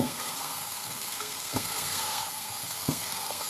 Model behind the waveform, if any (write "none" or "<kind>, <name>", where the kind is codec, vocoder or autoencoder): codec, SNAC